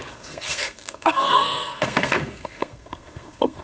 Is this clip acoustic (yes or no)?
no